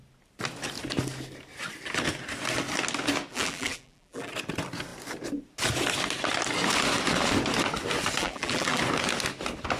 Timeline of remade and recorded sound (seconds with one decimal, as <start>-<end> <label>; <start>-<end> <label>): 0.0-3.3 recorded; 3.3-4.3 remade; 4.3-8.2 recorded; 8.2-8.8 remade; 8.8-9.8 recorded